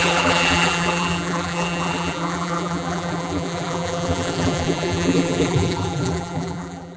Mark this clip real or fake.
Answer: fake